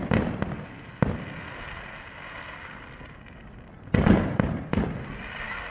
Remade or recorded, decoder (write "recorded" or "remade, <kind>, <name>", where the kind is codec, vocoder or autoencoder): recorded